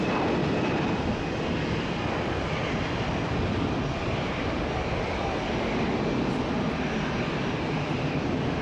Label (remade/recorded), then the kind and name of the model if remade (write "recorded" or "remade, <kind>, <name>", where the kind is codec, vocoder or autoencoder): recorded